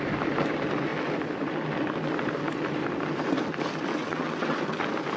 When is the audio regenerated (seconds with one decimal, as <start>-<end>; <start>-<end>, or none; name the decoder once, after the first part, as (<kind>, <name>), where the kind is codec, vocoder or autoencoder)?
3.9-4.6 (vocoder, WaveNeXt)